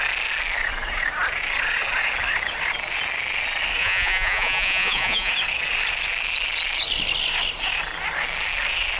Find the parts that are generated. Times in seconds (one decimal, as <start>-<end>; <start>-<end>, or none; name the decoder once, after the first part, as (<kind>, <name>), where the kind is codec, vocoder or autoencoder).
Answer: 3.8-5.3 (vocoder, Vocos)